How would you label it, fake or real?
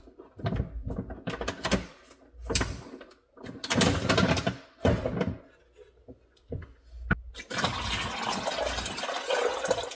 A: real